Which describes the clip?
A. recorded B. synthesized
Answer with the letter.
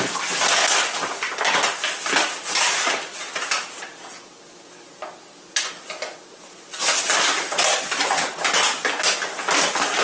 A